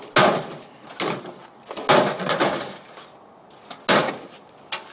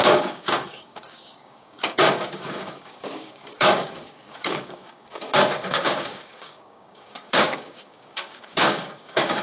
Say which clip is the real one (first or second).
first